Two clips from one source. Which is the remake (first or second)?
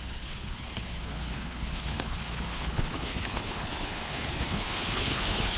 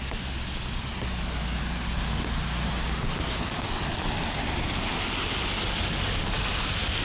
first